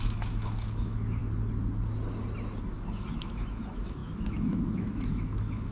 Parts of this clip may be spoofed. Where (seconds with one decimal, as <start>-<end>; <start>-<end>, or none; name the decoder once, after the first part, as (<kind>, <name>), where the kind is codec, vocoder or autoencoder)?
0.0-1.2 (autoencoder, DAC-VAE); 2.7-5.7